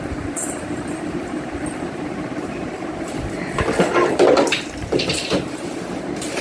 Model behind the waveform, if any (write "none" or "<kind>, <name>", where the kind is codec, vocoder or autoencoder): vocoder, BigVGAN v2